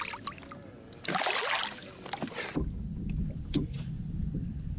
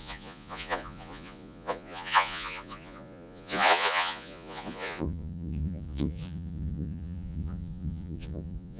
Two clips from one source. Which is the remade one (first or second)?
second